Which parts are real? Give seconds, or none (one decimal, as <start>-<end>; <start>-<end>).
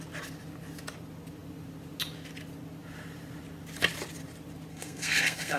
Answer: 0.0-4.7